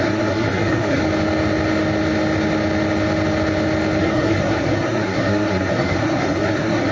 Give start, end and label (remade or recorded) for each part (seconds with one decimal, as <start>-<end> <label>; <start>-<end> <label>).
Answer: 0.0-1.0 remade; 1.0-4.0 recorded; 4.0-6.9 remade